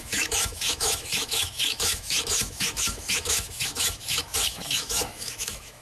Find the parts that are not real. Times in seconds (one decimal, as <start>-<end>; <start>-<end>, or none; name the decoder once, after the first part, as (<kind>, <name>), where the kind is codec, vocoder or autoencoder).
0.0-5.8 (autoencoder, DAC-VAE)